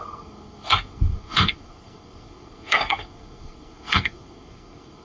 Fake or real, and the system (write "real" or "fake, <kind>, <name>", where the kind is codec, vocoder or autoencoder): fake, codec, SNAC